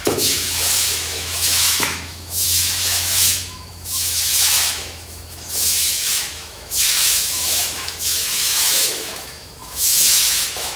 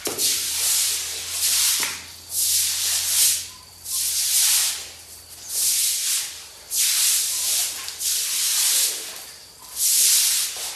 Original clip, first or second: second